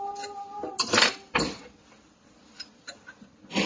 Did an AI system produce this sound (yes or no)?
no